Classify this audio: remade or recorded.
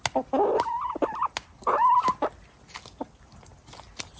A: recorded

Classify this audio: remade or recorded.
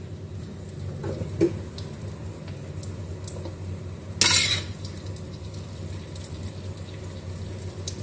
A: recorded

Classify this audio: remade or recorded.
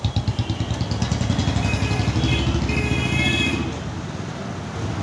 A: recorded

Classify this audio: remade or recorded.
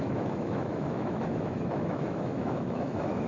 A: remade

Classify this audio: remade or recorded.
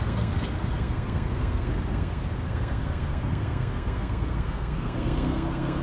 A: remade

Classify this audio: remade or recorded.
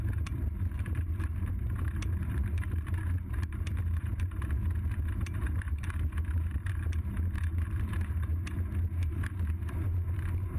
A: remade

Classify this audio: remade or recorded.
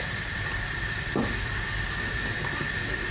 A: remade